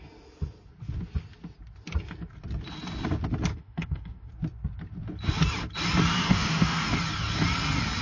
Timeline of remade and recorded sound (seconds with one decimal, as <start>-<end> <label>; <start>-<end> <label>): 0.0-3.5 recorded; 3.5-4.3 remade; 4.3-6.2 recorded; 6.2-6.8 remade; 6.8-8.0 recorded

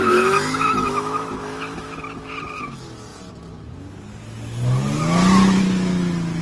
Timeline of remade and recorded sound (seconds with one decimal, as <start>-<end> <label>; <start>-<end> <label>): 0.0-2.0 remade; 2.0-6.4 recorded

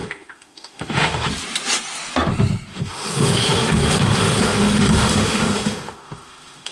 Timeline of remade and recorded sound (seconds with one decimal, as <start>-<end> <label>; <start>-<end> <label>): 0.0-1.3 remade; 1.3-2.7 recorded; 2.7-6.7 remade